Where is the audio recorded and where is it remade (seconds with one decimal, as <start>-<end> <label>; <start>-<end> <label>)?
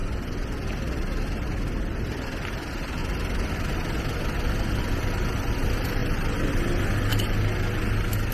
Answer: 0.0-2.5 recorded; 2.5-3.0 remade; 3.0-4.8 recorded; 4.8-6.0 remade; 6.0-6.5 recorded; 6.5-7.1 remade; 7.1-8.3 recorded